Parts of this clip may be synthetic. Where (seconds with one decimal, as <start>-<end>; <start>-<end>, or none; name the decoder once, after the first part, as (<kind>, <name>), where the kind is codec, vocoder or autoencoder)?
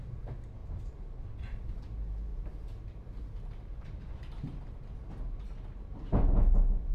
none